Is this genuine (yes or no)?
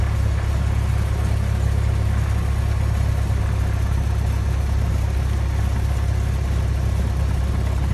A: yes